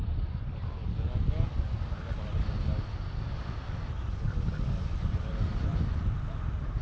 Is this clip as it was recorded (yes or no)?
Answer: yes